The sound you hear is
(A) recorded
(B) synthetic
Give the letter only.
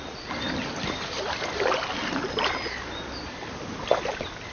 A